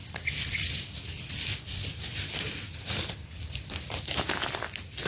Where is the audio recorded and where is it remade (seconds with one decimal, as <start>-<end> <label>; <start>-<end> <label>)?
0.0-5.1 recorded